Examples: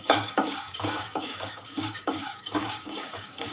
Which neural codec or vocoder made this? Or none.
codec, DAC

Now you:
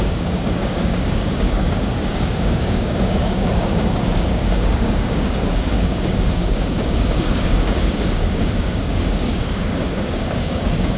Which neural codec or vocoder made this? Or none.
codec, DAC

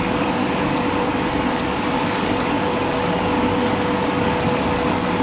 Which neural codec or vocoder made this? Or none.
codec, DAC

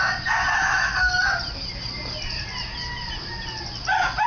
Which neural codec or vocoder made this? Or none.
none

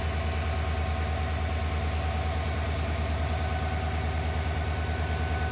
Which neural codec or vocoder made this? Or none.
none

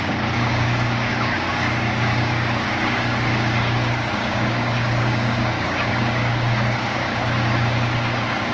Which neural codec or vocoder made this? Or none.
codec, DAC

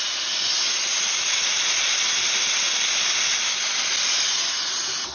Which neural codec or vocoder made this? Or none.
none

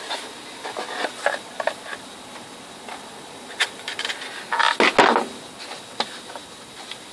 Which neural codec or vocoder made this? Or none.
none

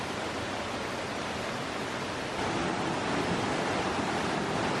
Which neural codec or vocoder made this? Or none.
none